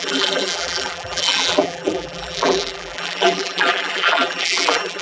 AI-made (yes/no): yes